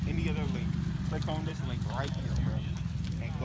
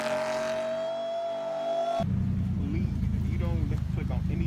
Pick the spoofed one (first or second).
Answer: first